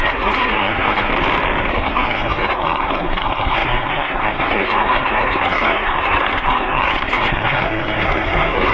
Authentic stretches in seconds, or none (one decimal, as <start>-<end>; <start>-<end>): 1.1-1.7